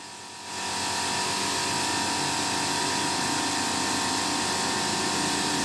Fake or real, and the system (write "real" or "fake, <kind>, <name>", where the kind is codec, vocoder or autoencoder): real